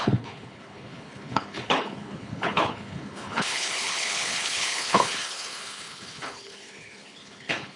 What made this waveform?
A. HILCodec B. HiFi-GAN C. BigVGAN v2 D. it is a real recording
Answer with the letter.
A